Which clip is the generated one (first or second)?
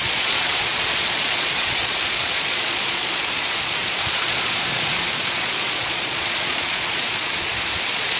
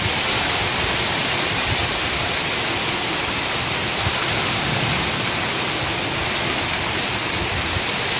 first